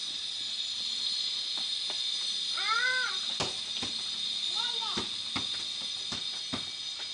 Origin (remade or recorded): recorded